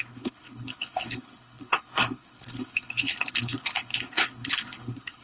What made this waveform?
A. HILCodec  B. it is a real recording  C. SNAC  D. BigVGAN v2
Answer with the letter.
A